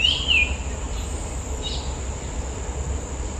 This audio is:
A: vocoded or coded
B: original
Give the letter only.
B